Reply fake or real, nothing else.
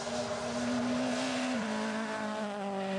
real